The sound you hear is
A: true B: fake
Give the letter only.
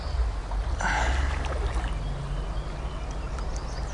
A